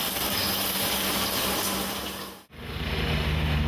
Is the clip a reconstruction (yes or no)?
no